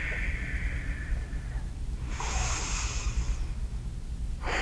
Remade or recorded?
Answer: recorded